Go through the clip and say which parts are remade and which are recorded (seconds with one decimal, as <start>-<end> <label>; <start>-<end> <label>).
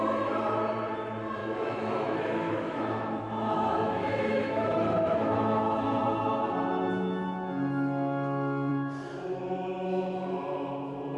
0.0-1.4 recorded; 1.4-6.0 remade; 6.0-11.2 recorded